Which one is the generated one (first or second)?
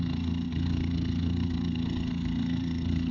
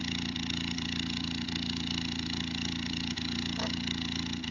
first